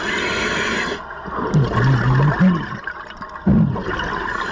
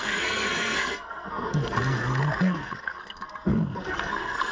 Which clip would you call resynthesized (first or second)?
second